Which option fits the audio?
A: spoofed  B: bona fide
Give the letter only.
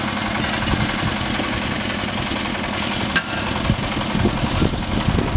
B